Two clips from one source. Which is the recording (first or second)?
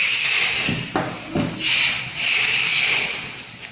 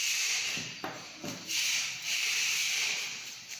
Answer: first